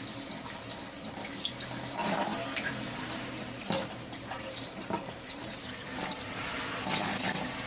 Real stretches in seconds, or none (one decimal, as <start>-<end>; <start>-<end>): 0.0-2.0; 6.6-7.7